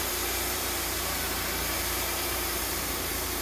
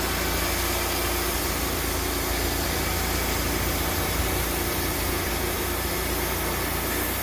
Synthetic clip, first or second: first